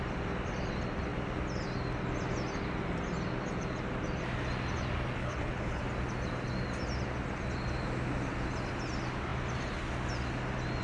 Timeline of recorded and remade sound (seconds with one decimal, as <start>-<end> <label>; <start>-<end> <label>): 0.0-5.2 recorded; 5.2-5.8 remade; 5.8-10.8 recorded